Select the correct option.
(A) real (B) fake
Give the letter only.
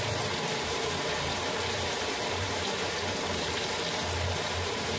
B